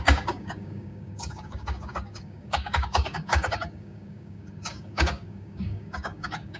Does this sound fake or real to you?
fake